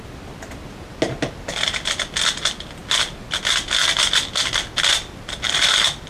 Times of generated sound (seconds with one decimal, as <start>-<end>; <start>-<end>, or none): none